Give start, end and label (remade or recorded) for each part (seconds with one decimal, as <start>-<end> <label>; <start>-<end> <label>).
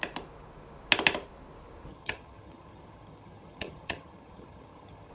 0.0-1.9 recorded; 1.9-5.1 remade